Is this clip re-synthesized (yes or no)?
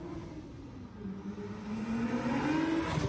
no